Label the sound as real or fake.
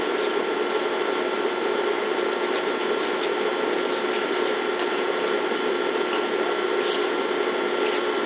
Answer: real